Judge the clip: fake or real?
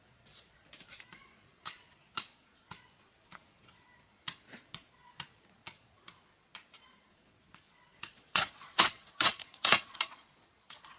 fake